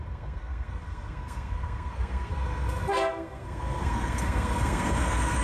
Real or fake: fake